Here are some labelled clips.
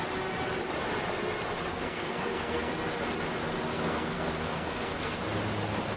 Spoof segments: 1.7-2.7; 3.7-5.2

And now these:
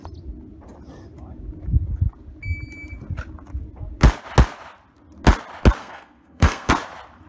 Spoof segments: 5.8-6.7

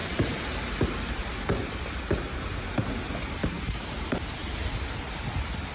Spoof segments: 0.0-1.8; 3.4-4.6

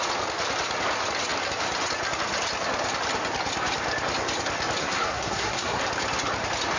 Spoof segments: 4.8-5.8

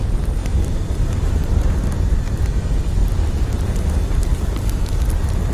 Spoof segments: 0.4-2.6; 3.0-3.5; 4.3-5.0

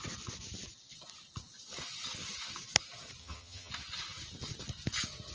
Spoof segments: 3.2-3.7

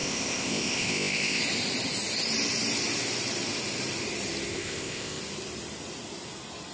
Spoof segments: 0.0-1.4; 4.5-5.2

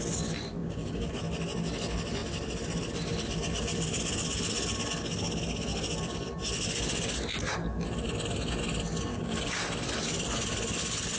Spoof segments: 0.6-1.1; 9.1-9.6